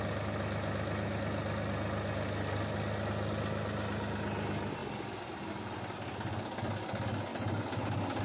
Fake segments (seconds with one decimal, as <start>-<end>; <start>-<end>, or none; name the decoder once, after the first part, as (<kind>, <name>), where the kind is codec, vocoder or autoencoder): 4.8-5.5 (vocoder, BigVGAN v2)